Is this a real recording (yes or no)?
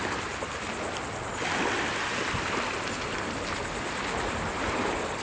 yes